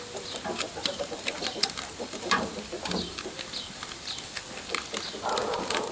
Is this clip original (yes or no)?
yes